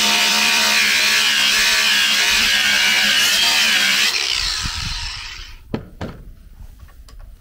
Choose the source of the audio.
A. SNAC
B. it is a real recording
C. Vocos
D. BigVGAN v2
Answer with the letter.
D